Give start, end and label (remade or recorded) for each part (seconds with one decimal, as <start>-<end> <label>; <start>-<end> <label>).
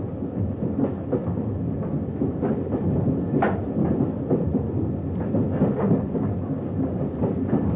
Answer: 0.0-7.8 recorded